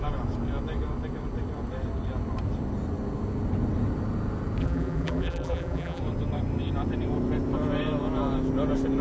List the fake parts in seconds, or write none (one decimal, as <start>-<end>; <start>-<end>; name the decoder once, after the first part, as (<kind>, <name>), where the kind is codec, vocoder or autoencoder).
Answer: 4.6-6.0 (vocoder, BigVGAN v2)